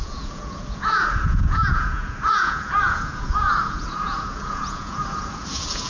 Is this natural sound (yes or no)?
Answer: no